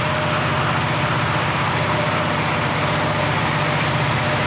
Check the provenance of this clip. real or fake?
fake